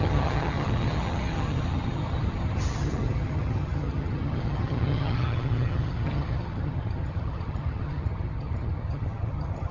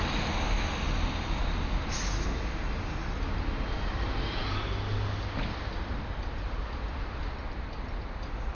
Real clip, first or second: second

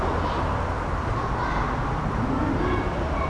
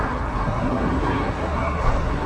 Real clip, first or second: first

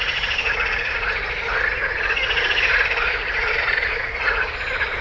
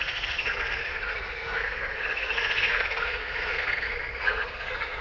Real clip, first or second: first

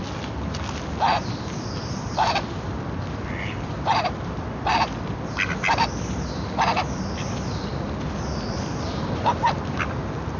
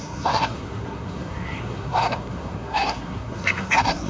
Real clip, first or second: first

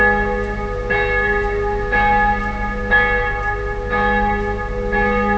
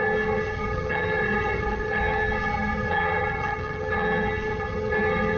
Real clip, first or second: first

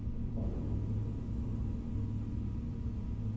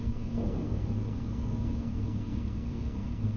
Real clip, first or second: first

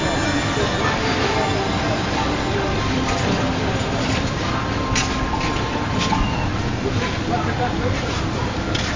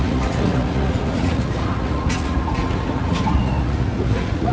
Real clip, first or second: first